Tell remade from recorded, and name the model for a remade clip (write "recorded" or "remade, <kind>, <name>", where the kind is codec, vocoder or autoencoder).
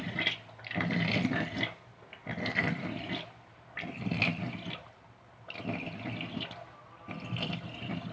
recorded